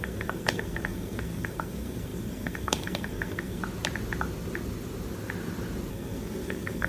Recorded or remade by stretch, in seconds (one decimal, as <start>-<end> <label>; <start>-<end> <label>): 0.0-3.6 remade; 3.6-5.9 recorded; 5.9-6.9 remade